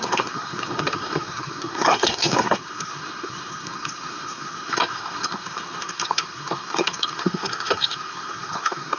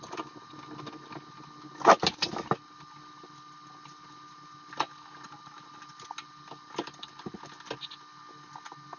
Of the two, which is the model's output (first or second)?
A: first